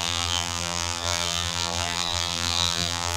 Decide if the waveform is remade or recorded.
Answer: remade